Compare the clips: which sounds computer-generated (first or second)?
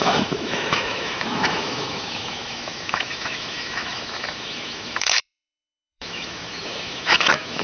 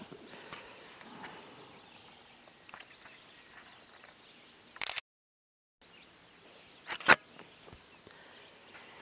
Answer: first